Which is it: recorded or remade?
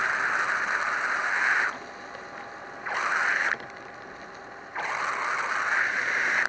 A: recorded